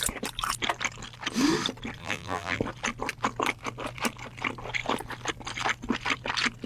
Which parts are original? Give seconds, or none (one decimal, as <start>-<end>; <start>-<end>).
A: 0.0-2.0; 2.6-6.7